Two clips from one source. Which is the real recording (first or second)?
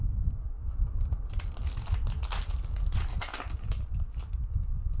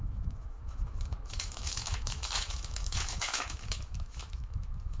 first